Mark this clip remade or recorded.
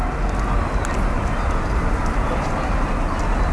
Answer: recorded